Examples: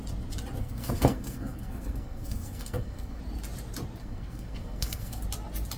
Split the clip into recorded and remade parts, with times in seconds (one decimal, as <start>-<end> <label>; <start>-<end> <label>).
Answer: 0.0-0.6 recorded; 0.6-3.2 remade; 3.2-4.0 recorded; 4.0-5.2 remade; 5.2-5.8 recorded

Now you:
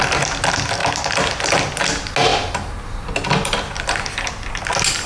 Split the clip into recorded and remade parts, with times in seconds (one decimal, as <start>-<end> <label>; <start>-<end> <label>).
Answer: 0.0-5.1 recorded

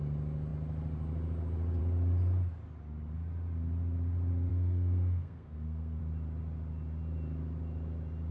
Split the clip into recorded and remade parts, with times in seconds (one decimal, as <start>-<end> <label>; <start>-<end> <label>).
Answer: 0.0-4.5 recorded; 4.5-6.0 remade; 6.0-8.3 recorded

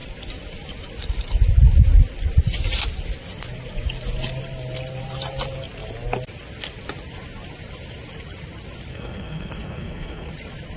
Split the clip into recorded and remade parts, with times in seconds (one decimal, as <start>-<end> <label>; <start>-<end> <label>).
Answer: 0.0-8.9 recorded; 8.9-10.3 remade; 10.3-10.8 recorded

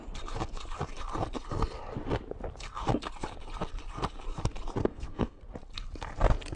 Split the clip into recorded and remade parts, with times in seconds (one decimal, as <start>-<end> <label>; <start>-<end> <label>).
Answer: 0.0-4.8 recorded; 4.8-5.4 remade; 5.4-6.6 recorded

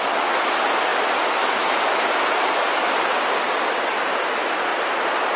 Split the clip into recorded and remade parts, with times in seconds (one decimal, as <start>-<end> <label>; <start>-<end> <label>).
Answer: 0.0-5.4 recorded

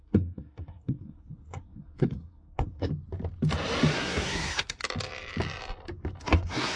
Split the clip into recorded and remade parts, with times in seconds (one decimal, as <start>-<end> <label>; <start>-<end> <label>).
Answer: 0.0-2.9 remade; 2.9-3.9 recorded; 3.9-4.8 remade; 4.8-6.2 recorded; 6.2-6.8 remade